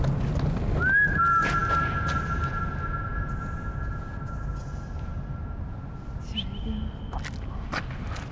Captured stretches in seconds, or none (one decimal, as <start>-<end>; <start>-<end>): 0.0-8.3